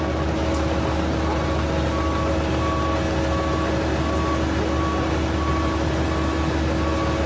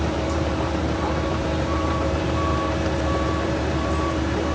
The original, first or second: first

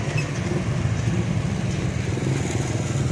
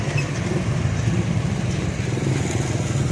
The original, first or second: first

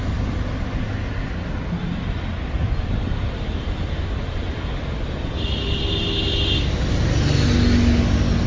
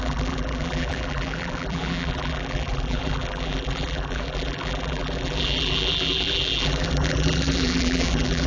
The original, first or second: first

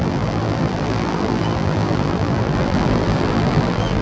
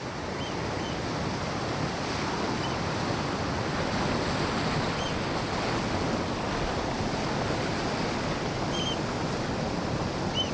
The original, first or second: second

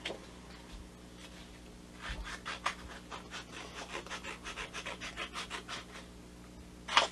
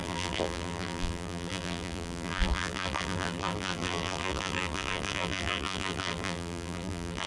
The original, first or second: first